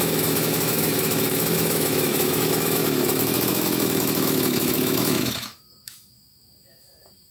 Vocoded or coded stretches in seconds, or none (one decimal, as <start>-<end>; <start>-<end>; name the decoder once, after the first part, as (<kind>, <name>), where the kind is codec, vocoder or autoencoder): 0.0-7.3 (autoencoder, DAC-VAE)